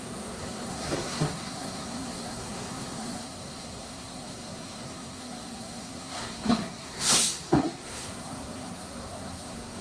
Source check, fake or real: fake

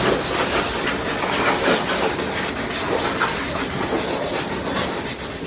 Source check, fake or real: real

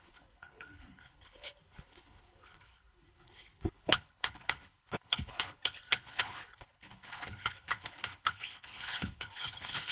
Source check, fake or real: fake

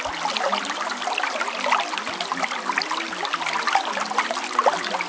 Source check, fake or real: real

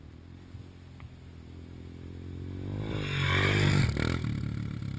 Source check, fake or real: real